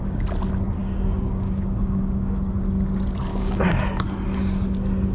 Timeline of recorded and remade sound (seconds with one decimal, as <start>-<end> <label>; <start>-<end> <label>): 0.0-0.8 recorded; 0.8-2.5 remade; 2.5-3.3 recorded; 3.3-3.8 remade; 3.8-5.1 recorded